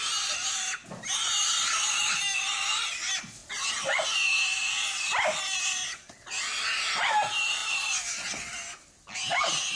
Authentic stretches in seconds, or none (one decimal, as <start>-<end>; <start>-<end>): 0.0-9.8